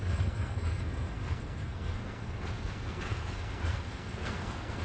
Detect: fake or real fake